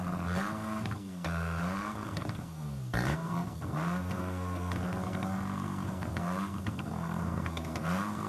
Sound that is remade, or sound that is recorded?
remade